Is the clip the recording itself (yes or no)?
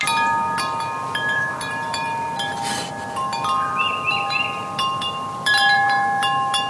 no